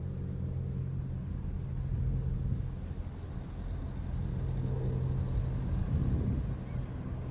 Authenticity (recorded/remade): recorded